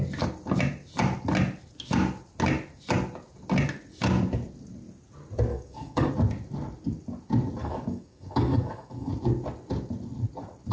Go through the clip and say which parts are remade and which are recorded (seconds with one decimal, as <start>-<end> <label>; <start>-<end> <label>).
0.0-5.5 recorded; 5.5-6.1 remade; 6.1-7.6 recorded; 7.6-9.1 remade; 9.1-10.7 recorded